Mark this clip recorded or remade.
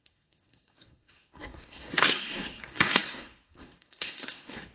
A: remade